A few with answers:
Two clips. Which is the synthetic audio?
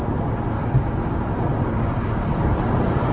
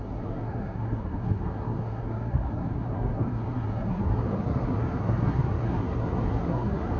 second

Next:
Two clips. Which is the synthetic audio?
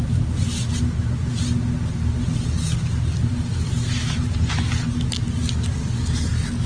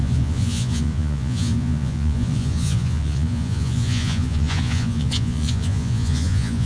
second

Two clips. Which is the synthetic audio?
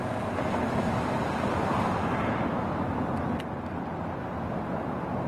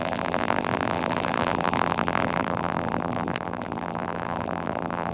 second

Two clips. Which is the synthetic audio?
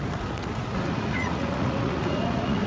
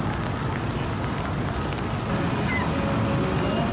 first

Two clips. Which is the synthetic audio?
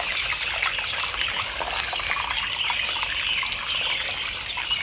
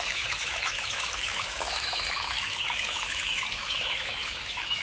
second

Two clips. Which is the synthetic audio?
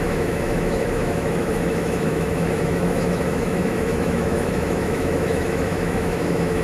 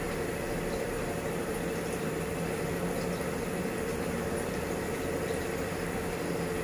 first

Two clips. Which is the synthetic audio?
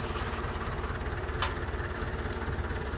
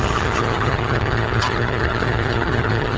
second